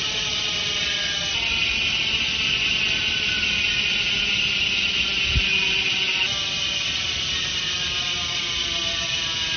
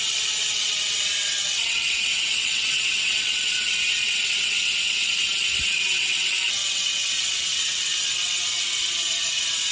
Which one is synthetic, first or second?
second